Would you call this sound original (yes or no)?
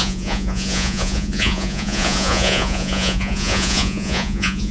no